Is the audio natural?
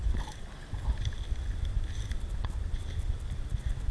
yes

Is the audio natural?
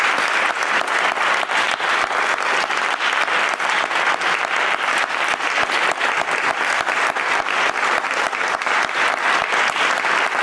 yes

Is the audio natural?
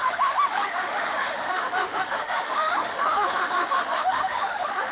no